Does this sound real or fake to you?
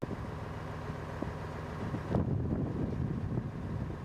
real